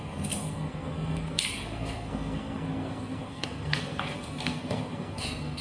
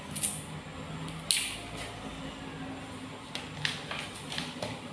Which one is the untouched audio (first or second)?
second